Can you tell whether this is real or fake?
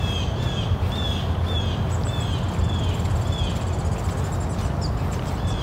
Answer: real